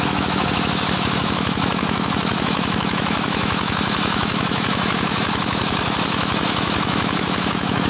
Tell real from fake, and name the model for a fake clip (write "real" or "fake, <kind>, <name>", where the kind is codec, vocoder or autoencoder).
fake, autoencoder, DAC-VAE